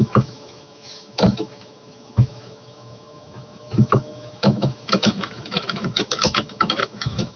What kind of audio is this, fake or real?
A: fake